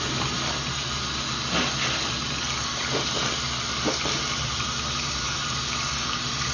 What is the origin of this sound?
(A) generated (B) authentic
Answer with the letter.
B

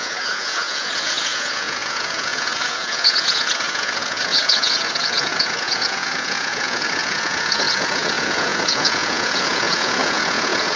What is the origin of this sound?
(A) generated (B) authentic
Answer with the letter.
A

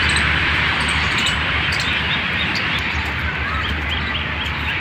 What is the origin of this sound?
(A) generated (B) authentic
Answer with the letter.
A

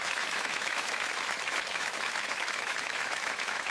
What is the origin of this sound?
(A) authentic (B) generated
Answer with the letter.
B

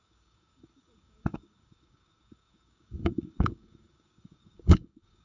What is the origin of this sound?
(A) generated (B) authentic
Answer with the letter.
A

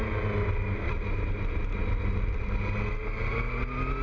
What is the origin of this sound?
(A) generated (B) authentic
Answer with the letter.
B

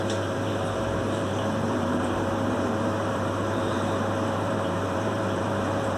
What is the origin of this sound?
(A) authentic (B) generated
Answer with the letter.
B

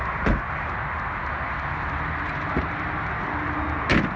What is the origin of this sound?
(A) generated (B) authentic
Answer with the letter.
B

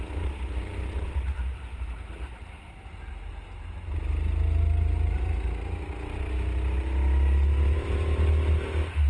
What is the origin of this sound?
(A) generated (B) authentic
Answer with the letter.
B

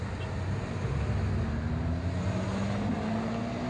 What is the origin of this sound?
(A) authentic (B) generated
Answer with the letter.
A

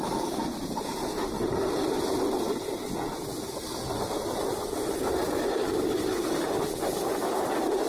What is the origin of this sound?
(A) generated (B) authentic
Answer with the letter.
A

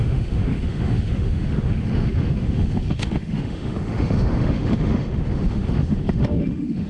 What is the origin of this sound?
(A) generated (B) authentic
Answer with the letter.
A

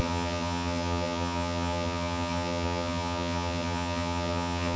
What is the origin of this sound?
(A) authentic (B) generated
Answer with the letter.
B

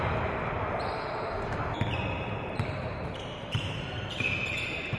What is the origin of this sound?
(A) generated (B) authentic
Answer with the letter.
A